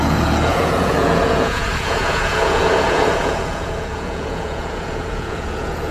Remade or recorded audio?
remade